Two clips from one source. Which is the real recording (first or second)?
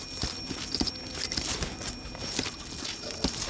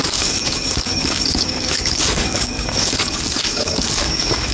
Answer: first